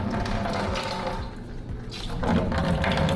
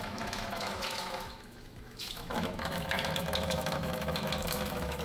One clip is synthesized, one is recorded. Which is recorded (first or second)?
first